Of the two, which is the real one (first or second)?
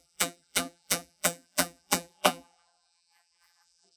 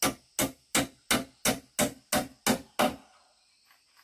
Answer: second